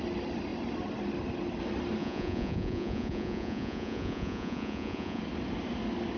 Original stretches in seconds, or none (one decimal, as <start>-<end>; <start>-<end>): 0.0-2.0; 5.2-6.2